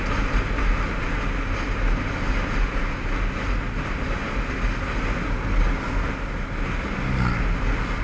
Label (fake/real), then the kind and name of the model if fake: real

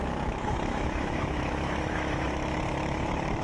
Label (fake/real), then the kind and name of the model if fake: fake, autoencoder, DAC-VAE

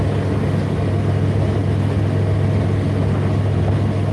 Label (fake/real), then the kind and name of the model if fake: real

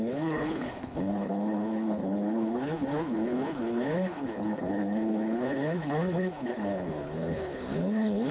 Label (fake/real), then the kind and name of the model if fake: fake, codec, HILCodec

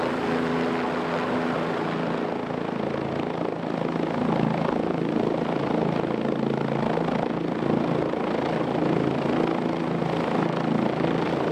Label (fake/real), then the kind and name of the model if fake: real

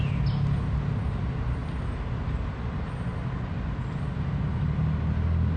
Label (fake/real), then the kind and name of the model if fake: real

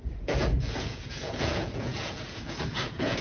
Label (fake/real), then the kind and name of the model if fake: fake, vocoder, Vocos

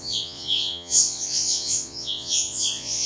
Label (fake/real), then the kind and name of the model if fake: fake, vocoder, Vocos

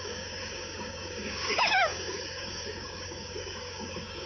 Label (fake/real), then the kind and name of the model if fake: fake, codec, DAC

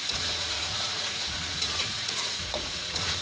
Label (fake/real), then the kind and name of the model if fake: fake, vocoder, Vocos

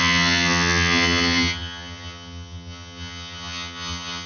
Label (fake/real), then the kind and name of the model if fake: fake, vocoder, HiFi-GAN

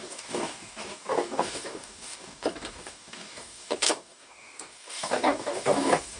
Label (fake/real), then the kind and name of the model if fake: fake, codec, DAC